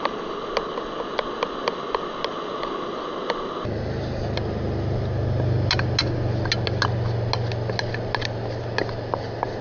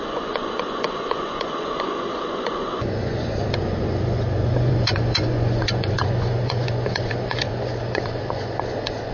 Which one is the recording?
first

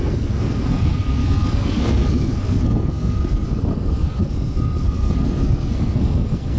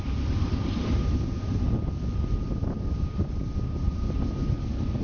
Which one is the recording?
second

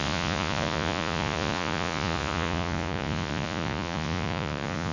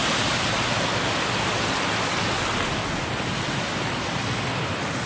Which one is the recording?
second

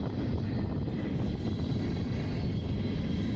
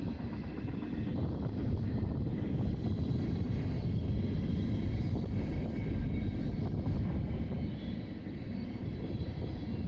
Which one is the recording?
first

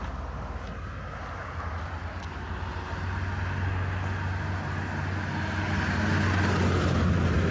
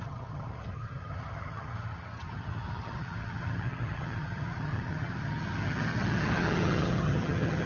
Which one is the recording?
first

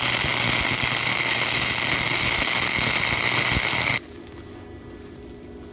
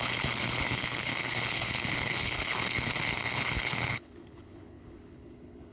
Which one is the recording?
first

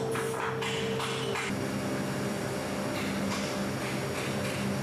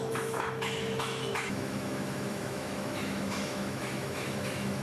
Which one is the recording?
first